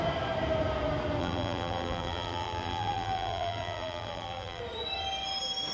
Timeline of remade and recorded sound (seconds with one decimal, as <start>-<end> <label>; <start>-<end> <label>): 0.0-1.2 recorded; 1.2-4.6 remade; 4.6-5.7 recorded